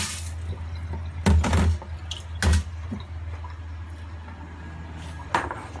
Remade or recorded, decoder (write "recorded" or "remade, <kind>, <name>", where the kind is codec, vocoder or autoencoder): recorded